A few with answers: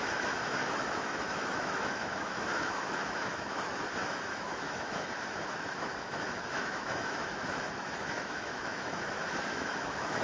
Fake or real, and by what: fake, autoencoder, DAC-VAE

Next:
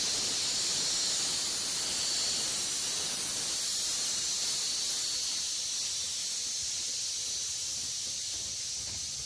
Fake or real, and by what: real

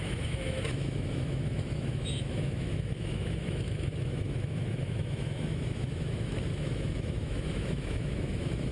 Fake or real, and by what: fake, autoencoder, DAC-VAE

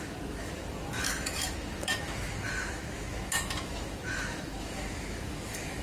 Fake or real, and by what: fake, autoencoder, DAC-VAE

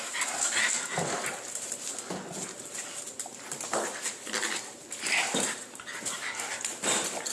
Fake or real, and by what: real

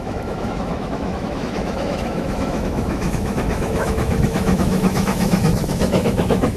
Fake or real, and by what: fake, autoencoder, DAC-VAE